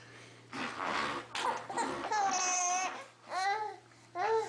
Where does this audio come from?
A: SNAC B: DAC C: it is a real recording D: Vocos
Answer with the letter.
C